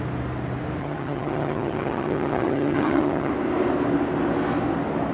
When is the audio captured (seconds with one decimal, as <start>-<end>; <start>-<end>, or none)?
0.0-0.8; 3.3-5.1